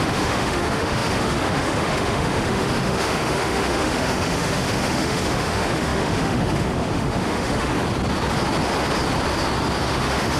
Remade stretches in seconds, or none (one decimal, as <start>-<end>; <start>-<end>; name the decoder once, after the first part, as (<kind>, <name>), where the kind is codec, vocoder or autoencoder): 0.0-7.7 (autoencoder, DAC-VAE); 9.8-10.4